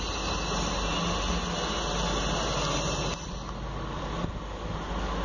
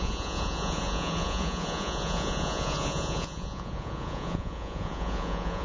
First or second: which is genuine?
first